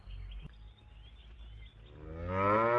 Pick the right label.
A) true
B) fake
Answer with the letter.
A